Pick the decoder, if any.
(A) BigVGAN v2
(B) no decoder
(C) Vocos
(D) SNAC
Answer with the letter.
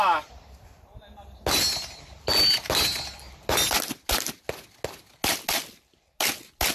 B